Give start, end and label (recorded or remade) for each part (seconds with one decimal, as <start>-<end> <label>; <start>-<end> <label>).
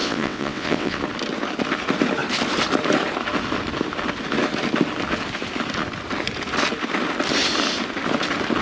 0.0-1.0 remade; 1.0-8.6 recorded